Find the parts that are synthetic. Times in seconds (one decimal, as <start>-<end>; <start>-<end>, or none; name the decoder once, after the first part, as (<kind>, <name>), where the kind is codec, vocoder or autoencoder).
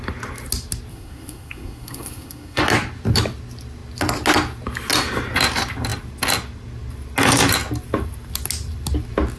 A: 0.9-2.6 (codec, SNAC)